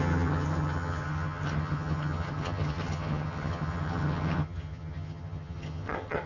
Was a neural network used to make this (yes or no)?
yes